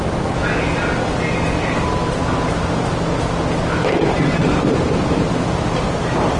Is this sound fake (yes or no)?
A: no